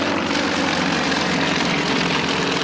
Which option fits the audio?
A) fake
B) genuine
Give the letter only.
B